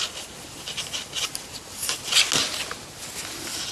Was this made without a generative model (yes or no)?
yes